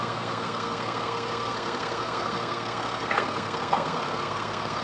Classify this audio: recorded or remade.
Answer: remade